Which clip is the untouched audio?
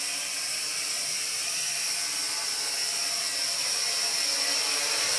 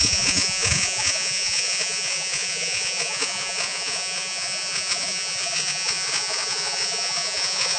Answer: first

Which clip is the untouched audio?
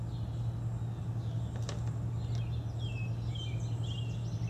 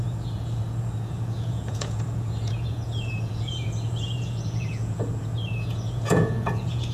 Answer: first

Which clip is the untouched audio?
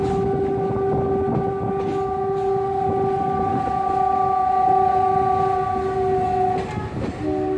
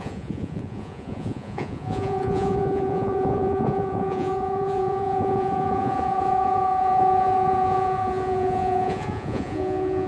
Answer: first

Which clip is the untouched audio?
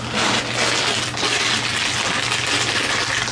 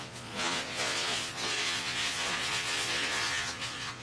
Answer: first